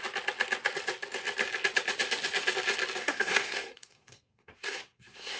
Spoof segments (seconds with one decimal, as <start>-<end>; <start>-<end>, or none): 3.0-5.4